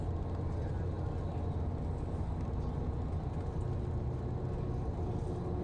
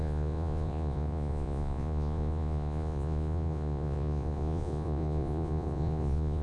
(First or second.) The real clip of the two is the first